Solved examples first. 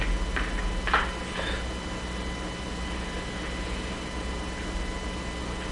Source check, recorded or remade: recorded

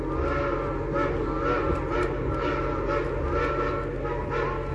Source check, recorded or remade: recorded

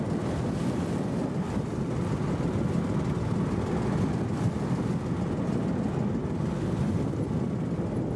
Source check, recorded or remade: recorded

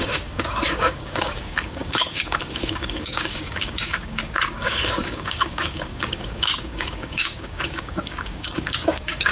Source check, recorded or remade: remade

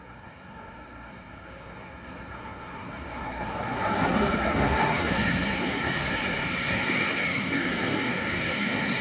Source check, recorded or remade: remade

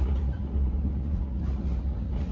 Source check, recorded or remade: remade